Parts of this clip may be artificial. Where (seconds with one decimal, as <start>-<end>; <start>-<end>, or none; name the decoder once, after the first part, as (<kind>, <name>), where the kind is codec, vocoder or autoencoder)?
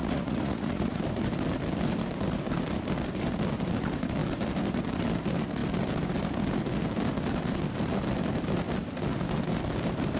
0.0-1.0 (vocoder, Vocos)